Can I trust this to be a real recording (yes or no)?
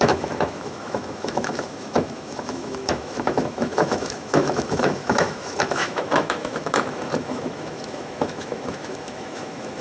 no